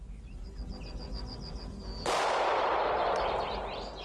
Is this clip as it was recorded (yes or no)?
yes